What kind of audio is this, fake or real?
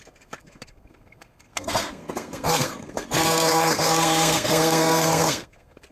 fake